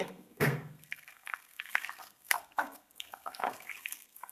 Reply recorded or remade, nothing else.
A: remade